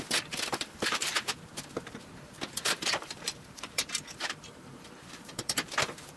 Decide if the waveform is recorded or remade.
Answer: remade